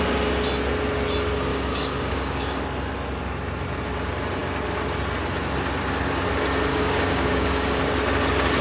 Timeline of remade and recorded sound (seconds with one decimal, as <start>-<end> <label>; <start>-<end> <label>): 0.0-1.5 recorded; 1.5-2.6 remade; 2.6-6.7 recorded; 6.7-7.8 remade; 7.8-8.6 recorded